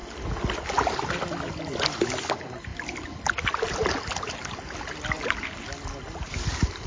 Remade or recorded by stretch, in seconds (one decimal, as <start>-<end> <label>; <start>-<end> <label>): 0.0-6.9 recorded